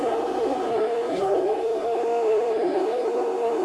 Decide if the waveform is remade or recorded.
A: remade